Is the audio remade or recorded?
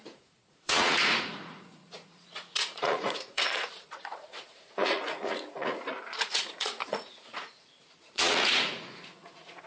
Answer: remade